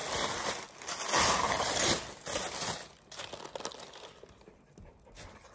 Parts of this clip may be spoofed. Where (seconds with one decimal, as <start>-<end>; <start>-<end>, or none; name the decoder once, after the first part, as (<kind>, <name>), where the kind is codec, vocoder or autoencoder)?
none